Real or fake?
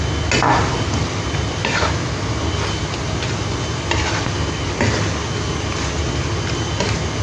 real